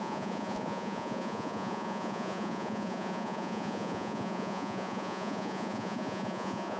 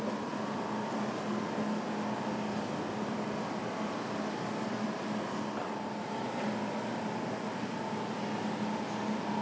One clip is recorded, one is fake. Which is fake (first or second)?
first